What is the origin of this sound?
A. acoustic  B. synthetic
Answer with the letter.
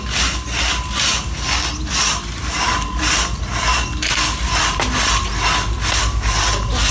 A